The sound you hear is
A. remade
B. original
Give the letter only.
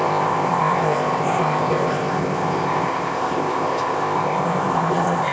A